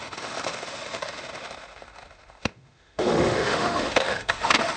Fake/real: fake